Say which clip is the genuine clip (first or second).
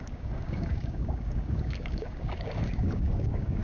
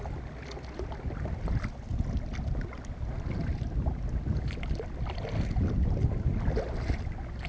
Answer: second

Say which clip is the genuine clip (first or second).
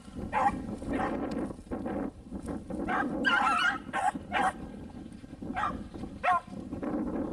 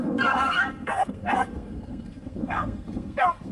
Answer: first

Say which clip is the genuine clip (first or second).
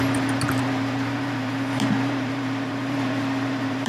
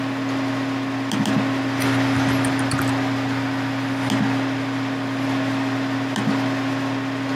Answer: second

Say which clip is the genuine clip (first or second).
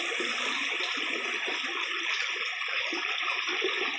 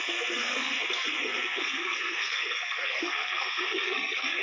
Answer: first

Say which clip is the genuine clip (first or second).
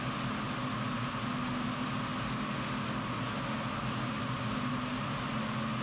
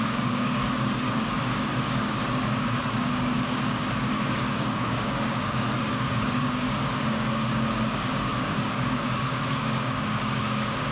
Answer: first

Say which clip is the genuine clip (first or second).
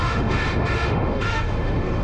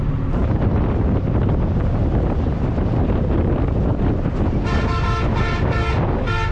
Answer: second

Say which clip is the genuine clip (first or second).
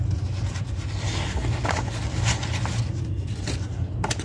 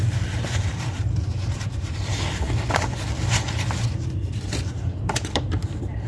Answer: first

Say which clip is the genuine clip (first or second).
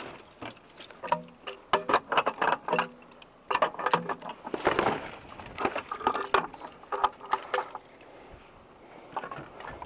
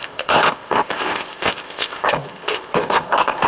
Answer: first